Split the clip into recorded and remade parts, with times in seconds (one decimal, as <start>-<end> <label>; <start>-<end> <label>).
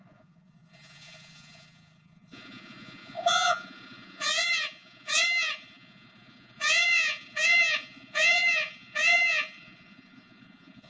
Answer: 0.0-10.9 remade